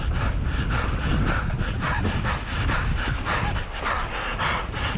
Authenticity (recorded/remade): recorded